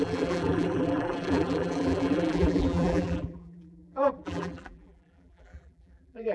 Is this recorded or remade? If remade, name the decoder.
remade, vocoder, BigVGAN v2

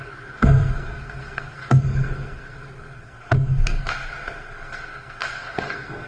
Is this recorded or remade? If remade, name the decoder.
remade, codec, SNAC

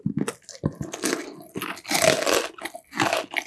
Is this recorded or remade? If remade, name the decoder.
recorded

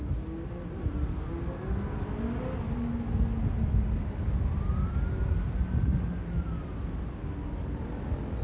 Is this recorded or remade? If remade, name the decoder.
recorded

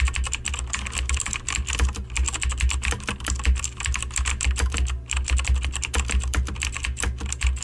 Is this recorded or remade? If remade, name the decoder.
recorded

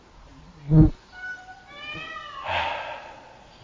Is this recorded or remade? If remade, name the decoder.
recorded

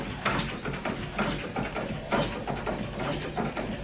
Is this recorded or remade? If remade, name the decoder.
recorded